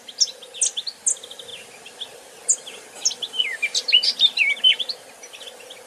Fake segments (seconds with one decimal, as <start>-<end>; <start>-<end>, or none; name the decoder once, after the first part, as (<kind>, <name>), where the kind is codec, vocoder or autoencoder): none